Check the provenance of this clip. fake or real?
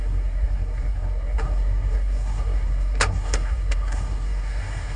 fake